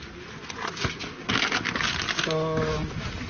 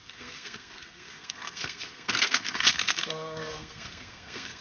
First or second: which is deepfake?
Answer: second